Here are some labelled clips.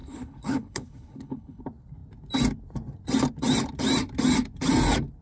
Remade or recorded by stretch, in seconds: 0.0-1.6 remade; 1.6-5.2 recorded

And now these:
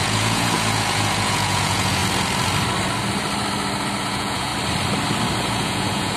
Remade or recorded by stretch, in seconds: 0.0-2.0 remade; 2.0-4.0 recorded; 4.0-4.5 remade; 4.5-5.4 recorded; 5.4-6.2 remade